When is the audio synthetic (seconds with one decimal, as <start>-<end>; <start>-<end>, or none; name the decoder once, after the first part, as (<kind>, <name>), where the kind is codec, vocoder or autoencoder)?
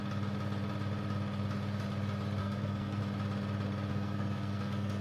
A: 2.4-3.0 (codec, SNAC); 3.9-5.0